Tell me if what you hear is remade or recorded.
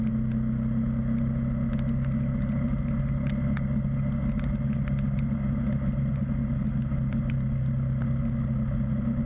recorded